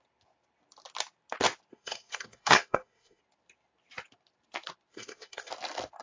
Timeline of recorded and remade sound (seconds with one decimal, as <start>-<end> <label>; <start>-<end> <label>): 0.0-1.7 recorded; 1.7-3.2 remade; 3.2-4.9 recorded; 4.9-5.5 remade; 5.5-6.0 recorded